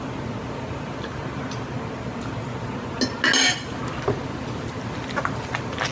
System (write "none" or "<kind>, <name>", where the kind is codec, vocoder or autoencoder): none